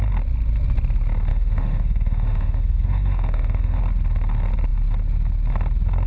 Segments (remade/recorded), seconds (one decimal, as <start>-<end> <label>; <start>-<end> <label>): 0.0-1.3 recorded; 1.3-3.8 remade; 3.8-6.1 recorded

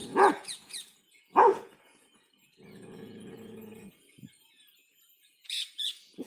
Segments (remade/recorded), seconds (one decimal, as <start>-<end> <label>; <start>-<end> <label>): 0.0-6.3 remade

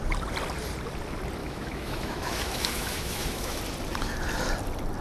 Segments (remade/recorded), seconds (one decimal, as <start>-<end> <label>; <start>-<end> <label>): 0.0-1.4 recorded; 1.4-3.6 remade; 3.6-5.0 recorded

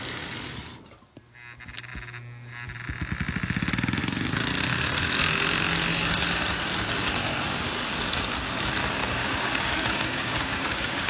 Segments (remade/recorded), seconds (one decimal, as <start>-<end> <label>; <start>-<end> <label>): 0.0-9.0 recorded; 9.0-11.1 remade

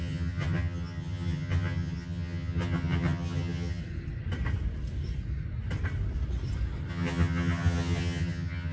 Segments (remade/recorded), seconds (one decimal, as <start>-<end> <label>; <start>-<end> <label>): 0.0-3.8 remade; 3.8-6.9 recorded; 6.9-8.7 remade

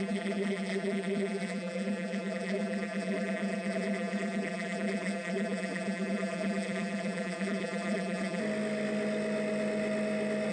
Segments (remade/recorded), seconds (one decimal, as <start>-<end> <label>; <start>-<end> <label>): 0.0-8.4 remade; 8.4-10.5 recorded

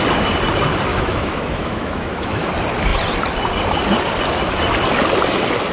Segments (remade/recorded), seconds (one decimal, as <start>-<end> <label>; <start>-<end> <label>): 0.0-0.9 recorded; 0.9-2.5 remade; 2.5-5.7 recorded

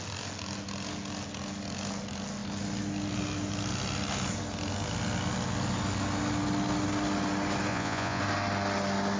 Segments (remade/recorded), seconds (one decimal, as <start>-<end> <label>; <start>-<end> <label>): 0.0-7.7 recorded; 7.7-8.2 remade; 8.2-9.2 recorded